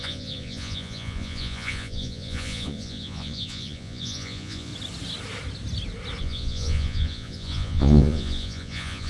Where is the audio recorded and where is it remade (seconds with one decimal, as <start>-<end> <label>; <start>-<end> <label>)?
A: 0.0-4.7 remade; 4.7-6.2 recorded; 6.2-9.1 remade